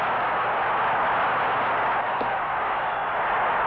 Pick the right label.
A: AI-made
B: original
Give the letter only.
B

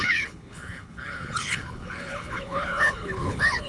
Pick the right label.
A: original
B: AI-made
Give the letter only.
B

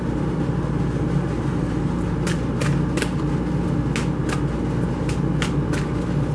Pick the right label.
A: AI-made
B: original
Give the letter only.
B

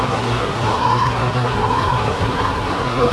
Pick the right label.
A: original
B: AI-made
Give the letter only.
B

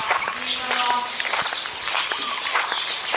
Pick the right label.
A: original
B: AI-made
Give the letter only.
A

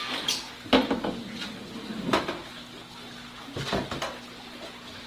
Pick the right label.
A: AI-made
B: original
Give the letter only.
B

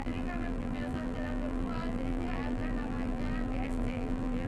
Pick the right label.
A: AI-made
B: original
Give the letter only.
A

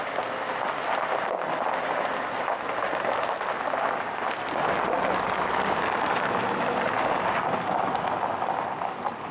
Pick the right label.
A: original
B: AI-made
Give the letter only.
A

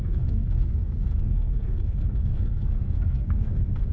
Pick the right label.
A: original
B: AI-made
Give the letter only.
B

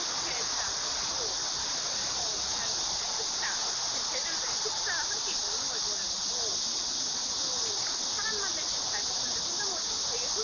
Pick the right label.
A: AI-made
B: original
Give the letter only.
B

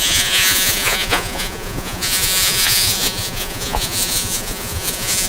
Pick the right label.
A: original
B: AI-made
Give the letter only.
B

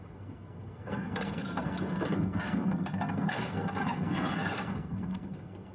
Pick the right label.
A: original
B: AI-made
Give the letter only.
B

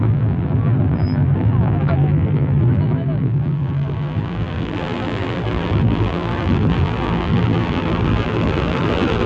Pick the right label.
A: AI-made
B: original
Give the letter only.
A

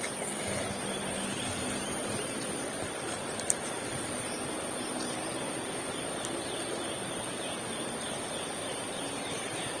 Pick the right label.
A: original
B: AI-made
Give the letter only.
B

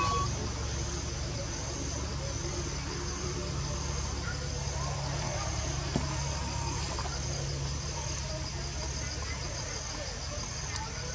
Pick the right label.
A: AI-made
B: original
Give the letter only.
B